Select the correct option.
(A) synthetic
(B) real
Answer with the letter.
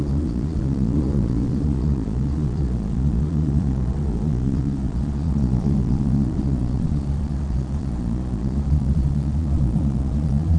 A